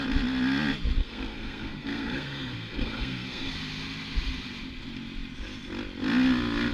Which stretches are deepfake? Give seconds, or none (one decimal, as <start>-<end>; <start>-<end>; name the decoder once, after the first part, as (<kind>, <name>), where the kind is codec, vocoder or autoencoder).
1.0-3.5 (codec, SNAC)